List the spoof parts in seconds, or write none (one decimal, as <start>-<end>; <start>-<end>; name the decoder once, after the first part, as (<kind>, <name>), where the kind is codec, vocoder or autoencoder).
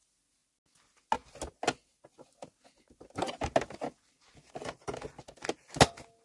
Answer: none